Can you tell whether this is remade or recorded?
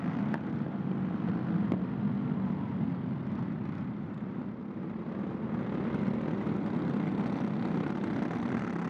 recorded